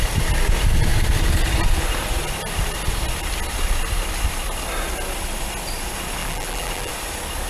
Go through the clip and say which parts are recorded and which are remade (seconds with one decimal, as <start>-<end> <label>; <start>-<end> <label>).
0.0-6.2 recorded; 6.2-6.9 remade; 6.9-7.5 recorded